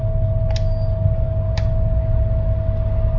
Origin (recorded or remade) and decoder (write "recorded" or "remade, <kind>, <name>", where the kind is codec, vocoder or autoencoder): recorded